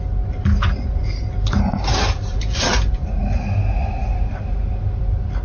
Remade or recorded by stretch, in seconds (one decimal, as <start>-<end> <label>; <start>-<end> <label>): 0.0-1.9 recorded; 1.9-3.2 remade; 3.2-5.4 recorded